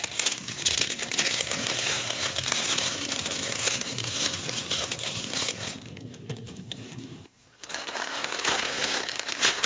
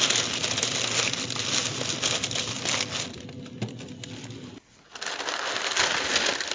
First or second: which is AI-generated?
first